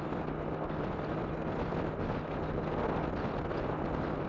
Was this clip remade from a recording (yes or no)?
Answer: no